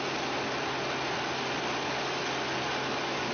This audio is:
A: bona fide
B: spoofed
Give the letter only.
A